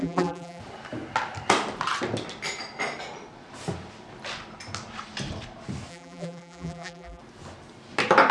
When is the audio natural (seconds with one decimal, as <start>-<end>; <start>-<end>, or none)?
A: 0.6-5.9; 7.2-8.3